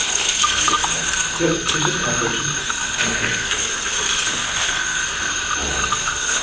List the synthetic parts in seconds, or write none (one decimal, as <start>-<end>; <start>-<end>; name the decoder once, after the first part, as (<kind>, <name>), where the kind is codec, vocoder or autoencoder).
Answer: 0.0-1.4 (codec, SNAC); 2.6-5.0; 5.7-6.4